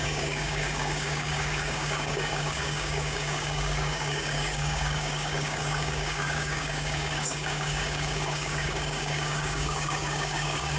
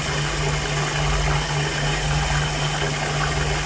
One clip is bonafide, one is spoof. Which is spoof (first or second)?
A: first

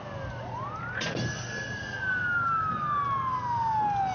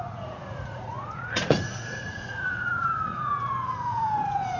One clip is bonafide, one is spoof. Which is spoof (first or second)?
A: second